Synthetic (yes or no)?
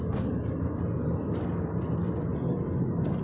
no